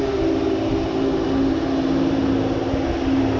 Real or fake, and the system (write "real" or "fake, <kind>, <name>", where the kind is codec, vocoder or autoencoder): real